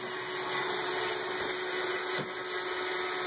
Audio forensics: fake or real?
real